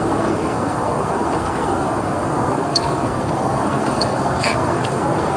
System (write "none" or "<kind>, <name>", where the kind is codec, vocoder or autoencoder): codec, SNAC